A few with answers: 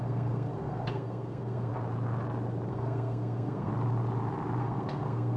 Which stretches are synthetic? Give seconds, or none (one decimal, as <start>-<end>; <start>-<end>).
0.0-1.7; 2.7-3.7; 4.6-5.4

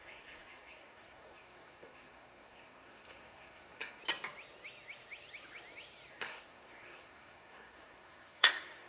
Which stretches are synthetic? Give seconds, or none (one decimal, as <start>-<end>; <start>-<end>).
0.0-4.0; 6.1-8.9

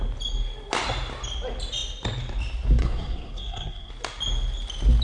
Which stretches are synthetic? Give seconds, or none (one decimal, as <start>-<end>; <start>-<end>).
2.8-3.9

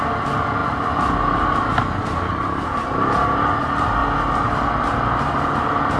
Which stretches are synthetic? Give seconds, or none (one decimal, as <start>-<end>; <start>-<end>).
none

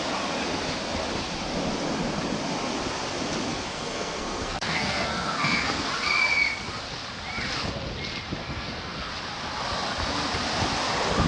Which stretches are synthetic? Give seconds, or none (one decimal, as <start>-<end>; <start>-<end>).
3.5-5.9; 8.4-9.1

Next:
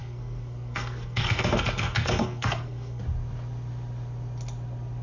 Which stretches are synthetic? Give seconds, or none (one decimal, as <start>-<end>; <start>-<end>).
0.0-3.0